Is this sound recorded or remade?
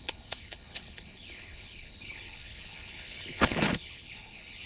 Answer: remade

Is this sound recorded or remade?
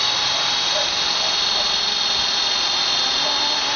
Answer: recorded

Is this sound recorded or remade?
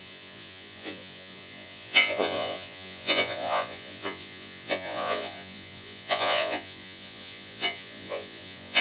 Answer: remade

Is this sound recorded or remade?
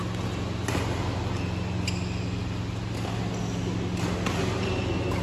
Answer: recorded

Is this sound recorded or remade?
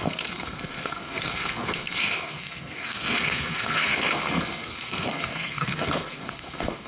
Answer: remade